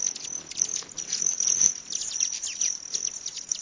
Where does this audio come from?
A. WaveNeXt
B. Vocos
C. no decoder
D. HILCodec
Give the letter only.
C